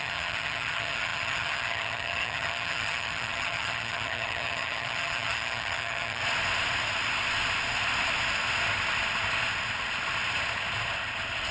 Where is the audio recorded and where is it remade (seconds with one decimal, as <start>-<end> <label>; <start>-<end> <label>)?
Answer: 0.0-6.2 remade; 6.2-11.5 recorded